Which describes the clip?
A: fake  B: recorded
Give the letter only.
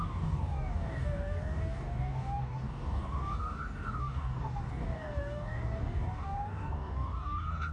A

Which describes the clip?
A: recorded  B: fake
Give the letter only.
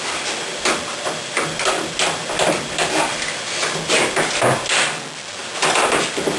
A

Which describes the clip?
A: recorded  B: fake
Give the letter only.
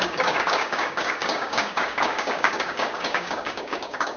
B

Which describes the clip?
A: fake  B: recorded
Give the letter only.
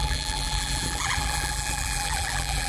A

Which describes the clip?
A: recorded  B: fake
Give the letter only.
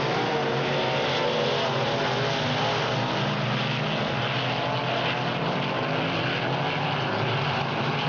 A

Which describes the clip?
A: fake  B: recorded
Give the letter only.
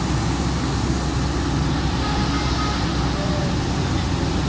B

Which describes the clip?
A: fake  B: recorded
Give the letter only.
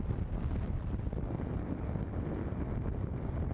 B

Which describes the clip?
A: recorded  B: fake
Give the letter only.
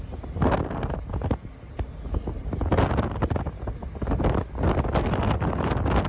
A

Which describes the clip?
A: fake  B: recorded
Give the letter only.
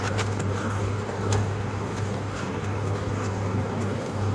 A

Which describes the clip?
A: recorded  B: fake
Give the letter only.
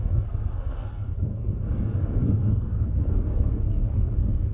B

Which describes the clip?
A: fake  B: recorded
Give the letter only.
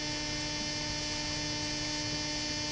B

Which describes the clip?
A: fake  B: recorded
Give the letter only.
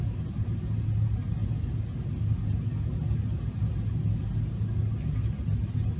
B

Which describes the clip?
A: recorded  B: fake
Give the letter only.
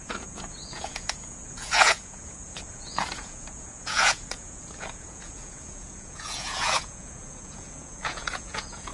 B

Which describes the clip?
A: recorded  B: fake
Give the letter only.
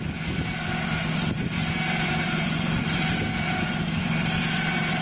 A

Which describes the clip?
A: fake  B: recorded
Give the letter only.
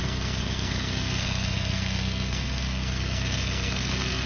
A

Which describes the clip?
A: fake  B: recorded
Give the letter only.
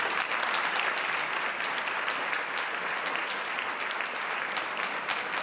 B